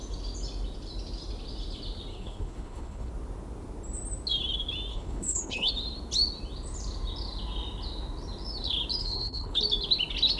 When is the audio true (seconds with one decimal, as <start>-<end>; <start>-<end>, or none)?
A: 0.0-2.1; 3.1-4.9; 5.7-9.0; 9.6-10.4